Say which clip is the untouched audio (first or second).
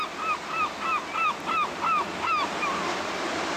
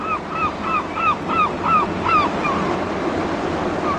first